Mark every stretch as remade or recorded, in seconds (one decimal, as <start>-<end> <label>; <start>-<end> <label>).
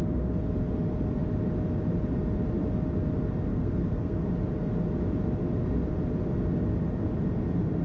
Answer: 0.0-3.5 recorded; 3.5-4.3 remade; 4.3-7.8 recorded